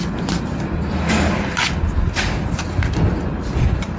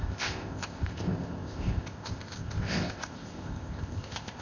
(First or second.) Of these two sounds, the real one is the first